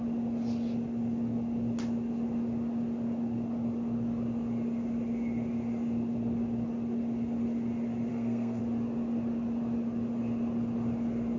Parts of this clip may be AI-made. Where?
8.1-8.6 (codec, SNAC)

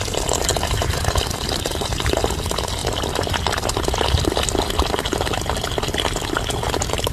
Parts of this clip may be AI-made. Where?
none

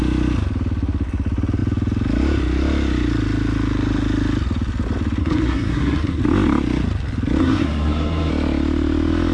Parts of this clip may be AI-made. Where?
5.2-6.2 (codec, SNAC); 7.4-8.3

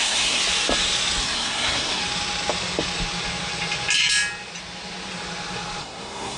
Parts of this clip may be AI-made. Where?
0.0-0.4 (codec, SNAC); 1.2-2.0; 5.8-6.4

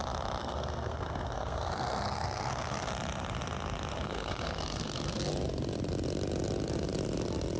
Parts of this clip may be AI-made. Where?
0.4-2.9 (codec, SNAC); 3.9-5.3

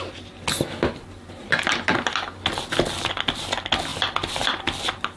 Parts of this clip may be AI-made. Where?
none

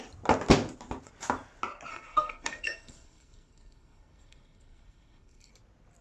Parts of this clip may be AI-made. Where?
1.9-5.5 (codec, SNAC)

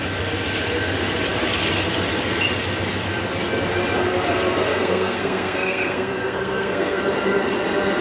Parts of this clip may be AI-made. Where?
4.7-7.0 (codec, SNAC)